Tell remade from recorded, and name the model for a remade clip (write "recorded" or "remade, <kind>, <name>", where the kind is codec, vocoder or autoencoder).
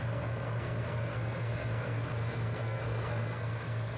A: remade, codec, SNAC